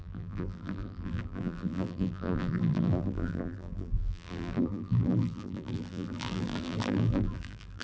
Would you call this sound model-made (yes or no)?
yes